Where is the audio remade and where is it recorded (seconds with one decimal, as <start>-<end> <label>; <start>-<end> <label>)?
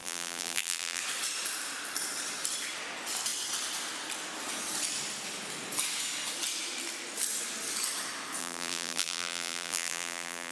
0.0-1.0 remade; 1.0-8.4 recorded; 8.4-10.5 remade